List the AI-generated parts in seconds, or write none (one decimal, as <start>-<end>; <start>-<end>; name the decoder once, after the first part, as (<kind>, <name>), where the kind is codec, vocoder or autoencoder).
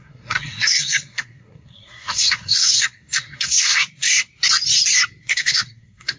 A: 0.0-4.3 (codec, SNAC); 5.2-6.2